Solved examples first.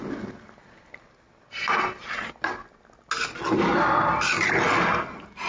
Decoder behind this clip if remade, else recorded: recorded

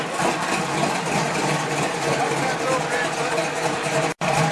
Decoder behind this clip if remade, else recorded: recorded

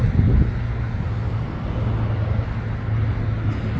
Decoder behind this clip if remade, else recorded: recorded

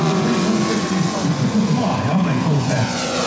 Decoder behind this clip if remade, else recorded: remade, vocoder, Vocos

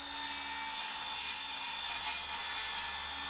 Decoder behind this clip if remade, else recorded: recorded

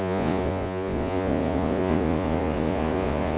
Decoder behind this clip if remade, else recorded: remade, vocoder, Vocos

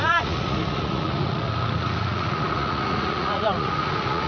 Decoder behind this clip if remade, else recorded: remade, vocoder, Vocos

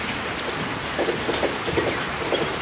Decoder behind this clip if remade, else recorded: recorded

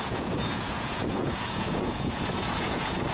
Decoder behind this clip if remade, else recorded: remade, vocoder, Vocos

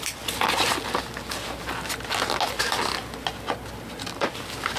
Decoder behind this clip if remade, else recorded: recorded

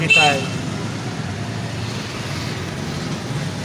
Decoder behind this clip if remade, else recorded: recorded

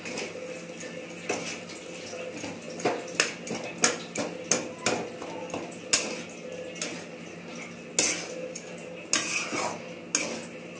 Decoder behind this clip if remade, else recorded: recorded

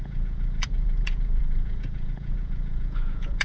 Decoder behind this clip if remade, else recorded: remade, vocoder, Vocos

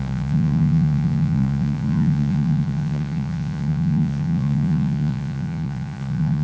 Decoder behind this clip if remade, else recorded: remade, vocoder, Vocos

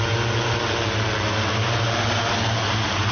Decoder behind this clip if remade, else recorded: recorded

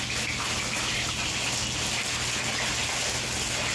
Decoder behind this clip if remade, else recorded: recorded